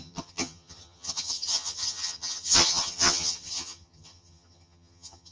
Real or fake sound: fake